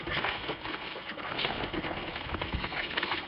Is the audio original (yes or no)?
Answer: no